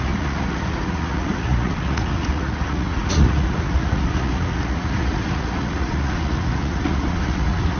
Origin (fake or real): fake